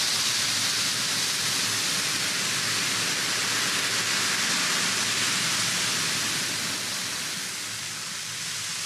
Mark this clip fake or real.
real